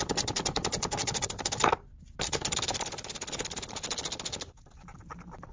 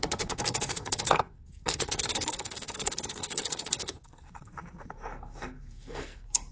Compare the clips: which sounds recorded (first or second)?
first